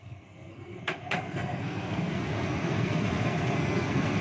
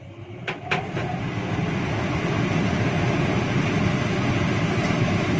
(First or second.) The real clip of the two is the second